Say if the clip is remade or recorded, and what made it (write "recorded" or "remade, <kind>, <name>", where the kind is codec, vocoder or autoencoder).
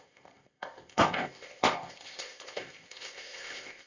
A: remade, codec, ZipCodec